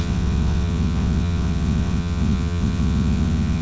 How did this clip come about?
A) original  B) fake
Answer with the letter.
B